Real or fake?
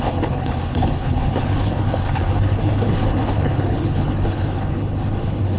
fake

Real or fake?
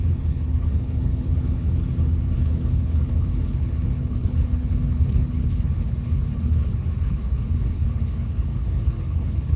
fake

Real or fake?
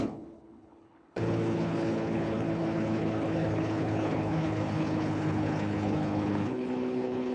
fake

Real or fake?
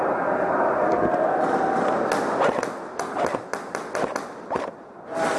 real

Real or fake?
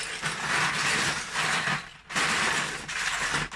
real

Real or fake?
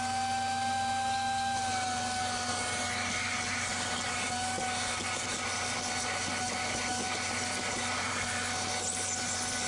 real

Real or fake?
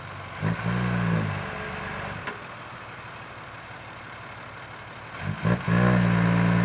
real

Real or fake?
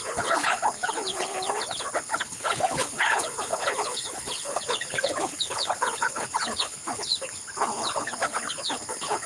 fake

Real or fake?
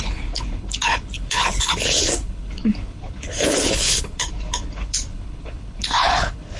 fake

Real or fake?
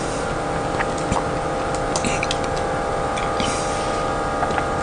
real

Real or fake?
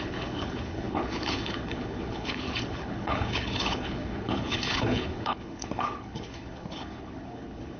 fake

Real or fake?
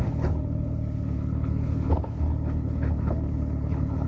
fake